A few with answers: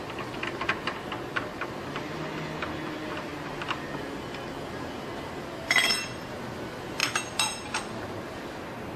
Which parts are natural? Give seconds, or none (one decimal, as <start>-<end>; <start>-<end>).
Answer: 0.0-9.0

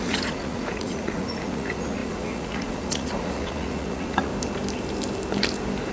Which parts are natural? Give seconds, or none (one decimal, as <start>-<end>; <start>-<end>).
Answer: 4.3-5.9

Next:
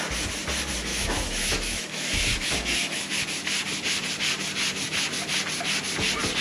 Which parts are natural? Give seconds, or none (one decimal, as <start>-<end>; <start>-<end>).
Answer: 0.0-0.9; 3.2-6.4

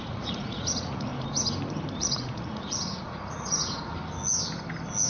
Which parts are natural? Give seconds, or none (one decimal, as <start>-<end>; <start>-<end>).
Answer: 1.1-2.0; 3.9-5.1

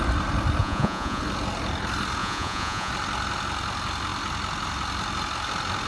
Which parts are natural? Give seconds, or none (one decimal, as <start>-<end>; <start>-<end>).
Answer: 0.0-0.6; 1.2-2.2; 2.9-5.9

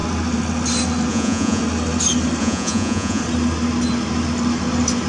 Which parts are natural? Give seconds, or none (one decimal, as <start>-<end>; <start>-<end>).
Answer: 0.0-1.1; 1.6-2.4; 3.2-5.1